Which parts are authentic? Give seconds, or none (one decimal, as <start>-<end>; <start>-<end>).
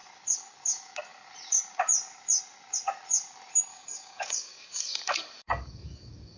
0.0-3.7